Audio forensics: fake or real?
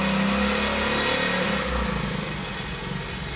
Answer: real